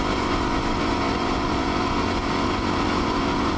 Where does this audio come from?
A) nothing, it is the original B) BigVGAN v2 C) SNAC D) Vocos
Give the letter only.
D